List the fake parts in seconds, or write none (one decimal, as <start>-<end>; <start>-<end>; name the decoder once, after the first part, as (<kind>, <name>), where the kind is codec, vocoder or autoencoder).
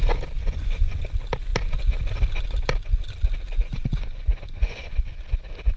0.4-0.9 (vocoder, Vocos); 3.6-5.2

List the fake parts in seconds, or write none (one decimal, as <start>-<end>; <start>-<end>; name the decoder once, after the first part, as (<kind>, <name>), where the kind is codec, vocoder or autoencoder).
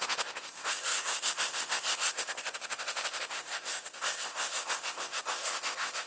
0.0-6.1 (codec, ZipCodec)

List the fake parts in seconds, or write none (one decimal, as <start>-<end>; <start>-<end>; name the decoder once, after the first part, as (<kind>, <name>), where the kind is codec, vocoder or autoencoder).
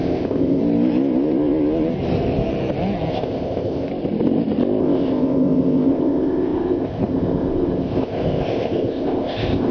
0.0-0.6 (codec, ZipCodec); 3.1-3.9; 4.8-9.7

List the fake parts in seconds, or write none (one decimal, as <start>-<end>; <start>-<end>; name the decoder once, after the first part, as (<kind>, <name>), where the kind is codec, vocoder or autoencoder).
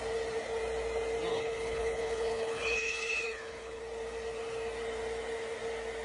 1.3-3.8 (codec, HILCodec)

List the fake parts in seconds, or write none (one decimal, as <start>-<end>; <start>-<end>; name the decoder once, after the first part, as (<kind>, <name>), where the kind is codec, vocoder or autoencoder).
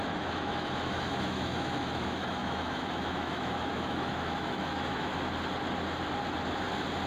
0.0-5.1 (autoencoder, DAC-VAE)